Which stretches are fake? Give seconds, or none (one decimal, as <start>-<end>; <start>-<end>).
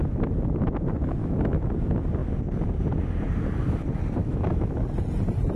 1.2-1.7; 4.2-4.8